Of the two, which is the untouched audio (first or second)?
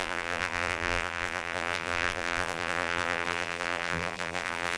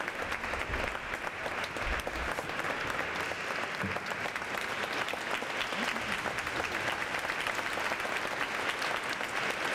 second